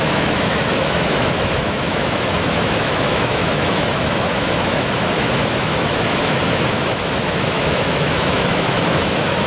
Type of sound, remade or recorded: remade